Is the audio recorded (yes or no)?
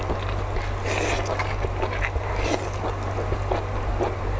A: yes